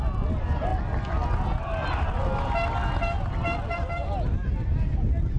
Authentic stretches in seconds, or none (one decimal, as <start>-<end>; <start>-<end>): 0.0-5.4